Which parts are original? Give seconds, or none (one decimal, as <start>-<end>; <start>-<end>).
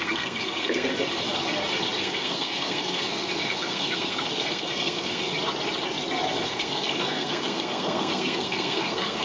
0.9-2.0; 5.2-6.3